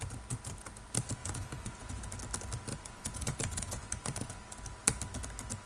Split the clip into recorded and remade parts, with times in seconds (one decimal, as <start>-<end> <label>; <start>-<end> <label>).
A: 0.0-1.2 recorded; 1.2-1.9 remade; 1.9-2.7 recorded; 2.7-4.4 remade; 4.4-5.7 recorded